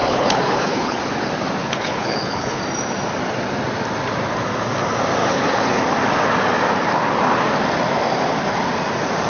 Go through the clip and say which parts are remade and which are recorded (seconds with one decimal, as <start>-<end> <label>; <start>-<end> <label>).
0.0-1.0 remade; 1.0-1.6 recorded; 1.6-2.6 remade; 2.6-5.2 recorded; 5.2-5.8 remade; 5.8-9.3 recorded